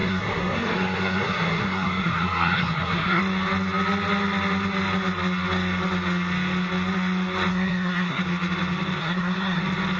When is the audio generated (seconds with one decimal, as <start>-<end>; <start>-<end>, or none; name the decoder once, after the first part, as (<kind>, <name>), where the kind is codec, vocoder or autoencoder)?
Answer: 0.0-3.2 (codec, SNAC); 7.5-8.2; 9.0-9.6

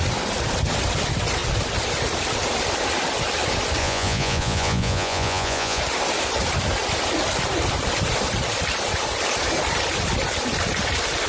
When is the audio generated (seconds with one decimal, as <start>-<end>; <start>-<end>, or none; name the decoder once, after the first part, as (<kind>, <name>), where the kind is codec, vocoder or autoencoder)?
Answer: 3.8-5.8 (vocoder, Vocos)